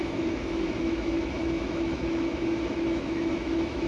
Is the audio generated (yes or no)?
yes